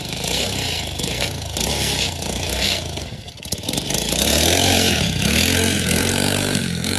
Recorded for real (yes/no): no